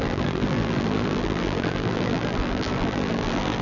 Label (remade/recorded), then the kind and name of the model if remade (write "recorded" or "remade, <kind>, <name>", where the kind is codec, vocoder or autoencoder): remade, vocoder, BigVGAN v2